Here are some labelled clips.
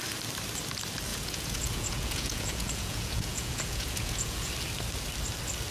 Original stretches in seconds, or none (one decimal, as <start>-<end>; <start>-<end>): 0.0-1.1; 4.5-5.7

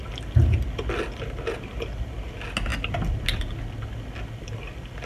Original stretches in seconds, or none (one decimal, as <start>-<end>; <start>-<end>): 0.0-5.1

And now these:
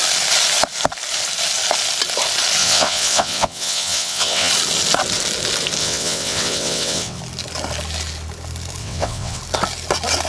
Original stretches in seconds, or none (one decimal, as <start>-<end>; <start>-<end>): 0.0-2.6; 4.5-5.8; 7.2-8.8; 9.4-10.3